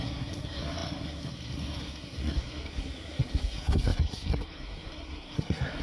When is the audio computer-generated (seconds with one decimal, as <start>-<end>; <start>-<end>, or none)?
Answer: 0.0-5.8